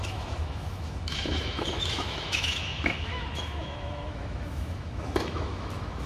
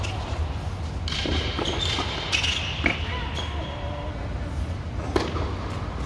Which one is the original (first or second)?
second